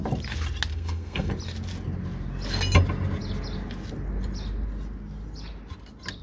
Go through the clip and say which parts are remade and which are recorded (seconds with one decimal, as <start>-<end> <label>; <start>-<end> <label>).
0.0-0.7 recorded; 0.7-1.3 remade; 1.3-6.2 recorded